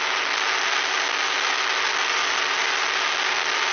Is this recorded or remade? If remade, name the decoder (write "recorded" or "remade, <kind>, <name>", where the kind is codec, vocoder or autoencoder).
recorded